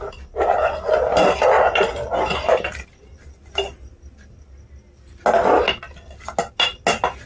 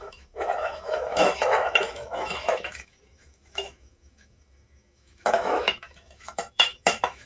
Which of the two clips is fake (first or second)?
second